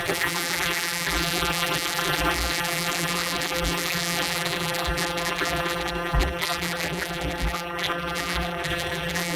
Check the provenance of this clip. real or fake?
fake